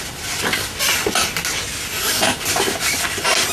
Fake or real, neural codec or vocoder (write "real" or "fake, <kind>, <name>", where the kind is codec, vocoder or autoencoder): real